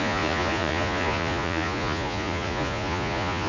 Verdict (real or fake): fake